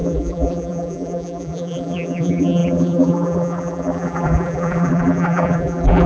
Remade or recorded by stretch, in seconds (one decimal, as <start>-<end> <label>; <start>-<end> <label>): 0.0-6.1 remade